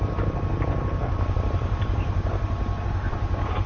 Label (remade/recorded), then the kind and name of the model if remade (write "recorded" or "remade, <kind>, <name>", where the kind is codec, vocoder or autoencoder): recorded